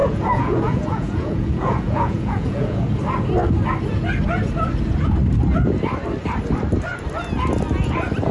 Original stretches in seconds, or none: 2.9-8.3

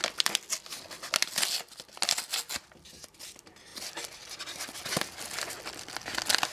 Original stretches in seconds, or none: 0.0-6.5

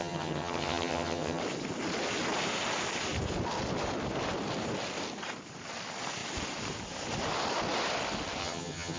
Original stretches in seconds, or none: 1.4-8.4

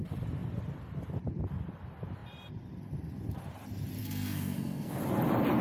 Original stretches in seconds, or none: 0.0-4.0; 5.0-5.6

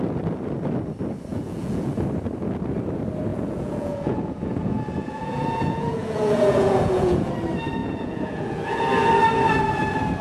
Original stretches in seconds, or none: 0.0-1.3; 1.9-3.3; 7.3-7.8; 8.8-10.2